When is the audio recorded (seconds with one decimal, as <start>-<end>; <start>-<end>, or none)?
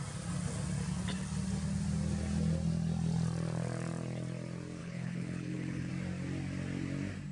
0.0-4.8; 5.9-7.3